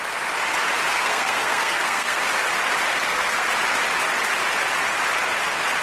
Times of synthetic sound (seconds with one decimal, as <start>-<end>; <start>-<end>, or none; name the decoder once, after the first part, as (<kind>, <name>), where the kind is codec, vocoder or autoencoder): 0.9-2.2 (codec, SNAC); 2.9-3.5